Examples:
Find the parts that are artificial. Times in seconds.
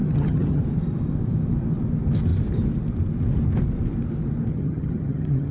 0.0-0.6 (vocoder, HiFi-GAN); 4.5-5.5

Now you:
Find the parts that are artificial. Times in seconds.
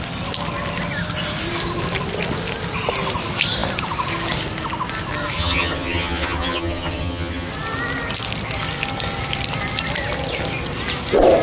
5.4-7.5 (vocoder, HiFi-GAN)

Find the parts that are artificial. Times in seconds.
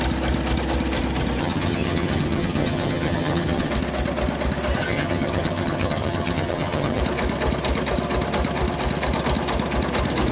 1.4-3.7 (vocoder, HiFi-GAN); 4.8-7.0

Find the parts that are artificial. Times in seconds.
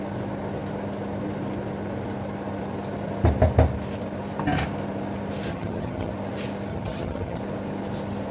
5.5-6.1 (vocoder, HiFi-GAN); 6.7-7.4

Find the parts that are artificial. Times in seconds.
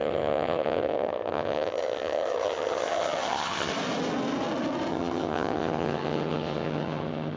0.0-3.7 (vocoder, HiFi-GAN); 4.9-7.4